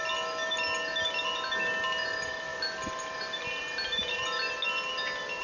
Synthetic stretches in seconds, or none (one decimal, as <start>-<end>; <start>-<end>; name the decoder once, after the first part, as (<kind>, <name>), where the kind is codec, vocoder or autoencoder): none